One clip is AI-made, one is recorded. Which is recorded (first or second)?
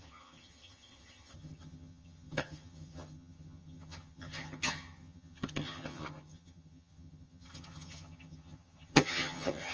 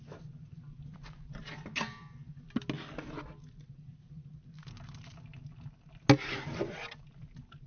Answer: second